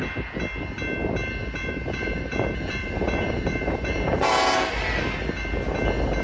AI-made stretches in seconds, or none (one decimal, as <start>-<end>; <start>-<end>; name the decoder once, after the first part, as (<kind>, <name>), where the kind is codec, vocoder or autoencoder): 1.4-4.7 (vocoder, Vocos)